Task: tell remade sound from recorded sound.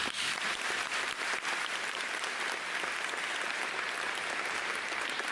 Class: remade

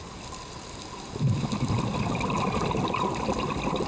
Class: remade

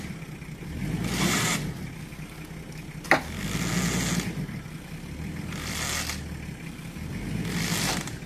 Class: recorded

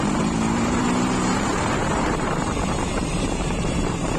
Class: remade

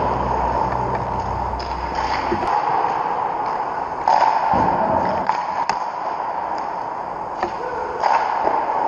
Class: recorded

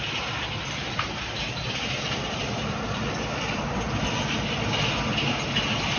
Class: recorded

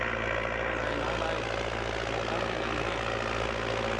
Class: recorded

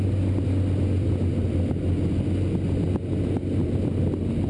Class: recorded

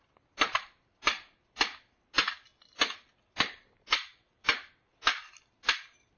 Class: recorded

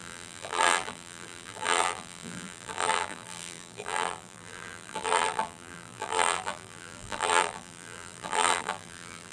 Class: remade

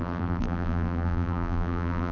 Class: remade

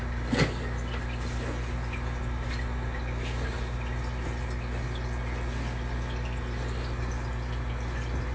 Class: recorded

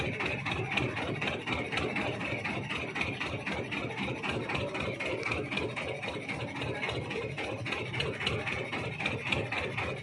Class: recorded